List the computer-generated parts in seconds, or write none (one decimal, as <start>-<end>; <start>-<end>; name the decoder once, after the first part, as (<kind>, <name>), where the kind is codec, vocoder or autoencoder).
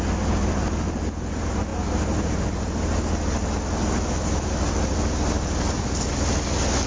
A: none